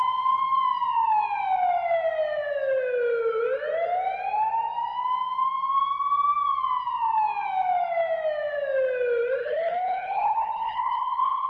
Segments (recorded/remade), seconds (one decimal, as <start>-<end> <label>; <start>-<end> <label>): 0.0-9.4 recorded; 9.4-11.5 remade